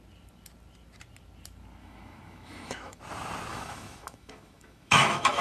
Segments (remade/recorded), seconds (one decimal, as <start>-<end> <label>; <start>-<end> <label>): 0.0-1.8 recorded; 1.8-3.0 remade; 3.0-3.5 recorded; 3.5-5.4 remade